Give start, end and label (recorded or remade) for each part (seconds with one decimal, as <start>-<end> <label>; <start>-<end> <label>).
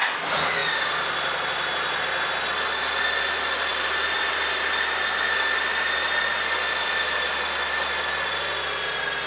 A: 0.0-0.6 recorded; 0.6-2.0 remade; 2.0-3.7 recorded; 3.7-7.3 remade; 7.3-9.3 recorded